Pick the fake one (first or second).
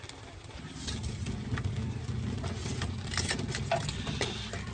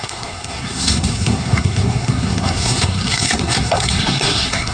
second